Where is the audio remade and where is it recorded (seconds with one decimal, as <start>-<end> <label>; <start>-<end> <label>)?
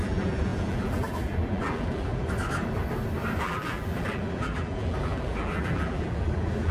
0.0-2.1 remade; 2.1-3.4 recorded; 3.4-6.7 remade